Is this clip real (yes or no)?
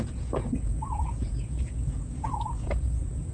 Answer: no